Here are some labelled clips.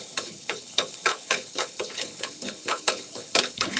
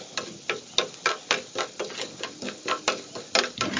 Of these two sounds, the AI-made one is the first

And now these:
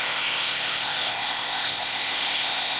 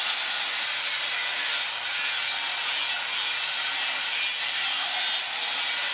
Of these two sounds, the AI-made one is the first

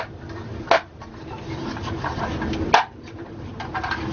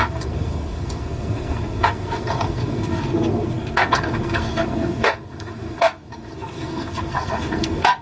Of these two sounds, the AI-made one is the second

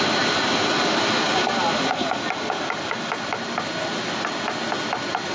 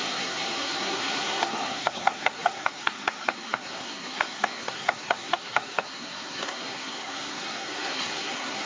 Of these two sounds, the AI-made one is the second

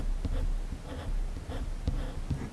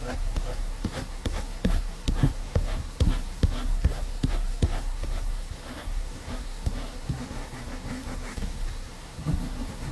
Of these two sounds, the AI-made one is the second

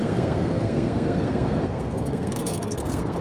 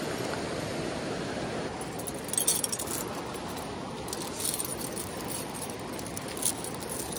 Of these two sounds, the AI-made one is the first